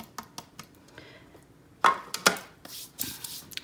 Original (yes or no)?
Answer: yes